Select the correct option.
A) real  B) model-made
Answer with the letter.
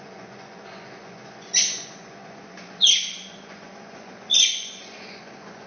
B